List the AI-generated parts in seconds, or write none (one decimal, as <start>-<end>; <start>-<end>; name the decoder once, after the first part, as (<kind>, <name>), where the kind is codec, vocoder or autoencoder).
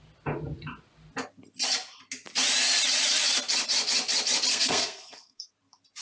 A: 4.5-5.5 (codec, SNAC)